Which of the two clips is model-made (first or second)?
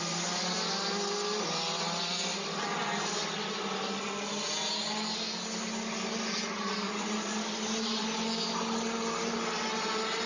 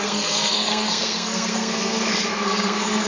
second